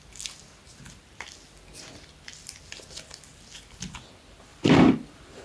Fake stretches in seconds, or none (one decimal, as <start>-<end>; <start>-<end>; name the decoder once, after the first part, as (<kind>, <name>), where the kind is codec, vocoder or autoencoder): 4.5-5.4 (vocoder, BigVGAN v2)